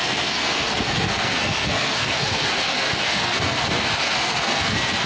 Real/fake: fake